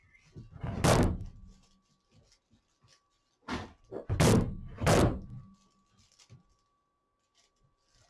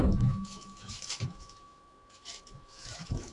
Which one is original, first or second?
first